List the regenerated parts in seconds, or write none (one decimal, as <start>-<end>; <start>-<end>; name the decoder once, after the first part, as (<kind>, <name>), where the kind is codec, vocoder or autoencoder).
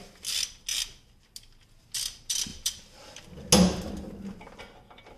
none